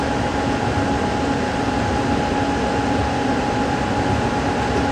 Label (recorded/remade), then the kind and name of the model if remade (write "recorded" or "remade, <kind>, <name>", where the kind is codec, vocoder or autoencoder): recorded